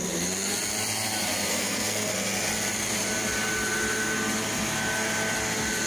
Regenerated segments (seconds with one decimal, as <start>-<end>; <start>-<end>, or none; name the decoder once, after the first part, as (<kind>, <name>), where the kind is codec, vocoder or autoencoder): 1.5-2.1 (codec, SNAC)